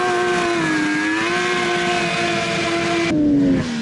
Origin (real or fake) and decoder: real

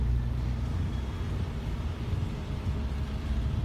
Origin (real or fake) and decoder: real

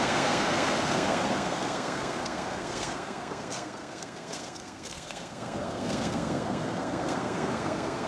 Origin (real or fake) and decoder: fake, codec, SNAC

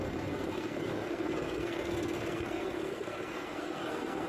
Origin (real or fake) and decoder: fake, codec, SNAC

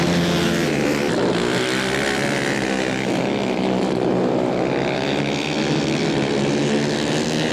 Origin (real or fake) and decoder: real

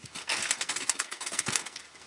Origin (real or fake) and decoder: fake, codec, SNAC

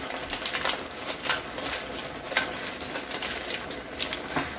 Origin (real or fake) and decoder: real